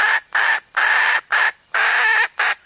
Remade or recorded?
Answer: recorded